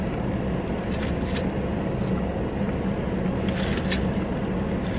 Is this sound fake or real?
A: real